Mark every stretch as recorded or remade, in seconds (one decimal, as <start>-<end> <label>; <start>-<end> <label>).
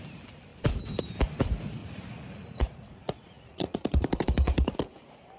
0.0-1.8 recorded; 1.8-5.0 remade; 5.0-5.4 recorded